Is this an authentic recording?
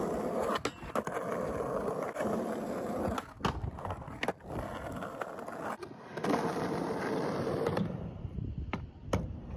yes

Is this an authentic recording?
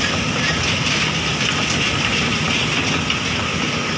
yes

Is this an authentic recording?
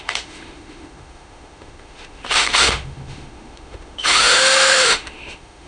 no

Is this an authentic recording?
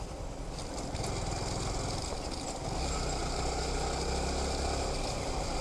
yes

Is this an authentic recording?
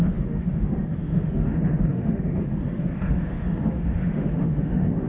no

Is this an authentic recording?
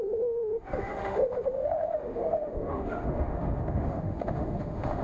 no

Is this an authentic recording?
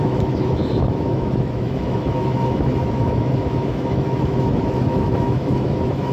no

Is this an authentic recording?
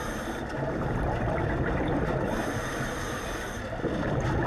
yes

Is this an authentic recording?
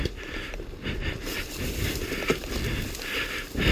yes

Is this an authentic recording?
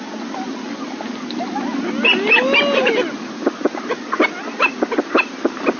yes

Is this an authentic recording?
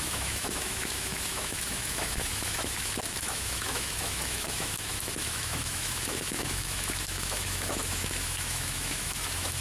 no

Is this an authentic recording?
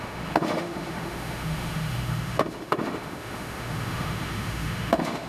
no